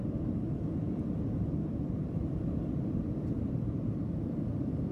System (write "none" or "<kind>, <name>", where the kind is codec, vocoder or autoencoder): vocoder, BigVGAN v2